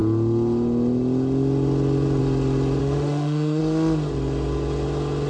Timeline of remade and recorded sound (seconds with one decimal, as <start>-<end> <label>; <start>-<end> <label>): 0.0-2.8 recorded; 2.8-3.6 remade; 3.6-5.3 recorded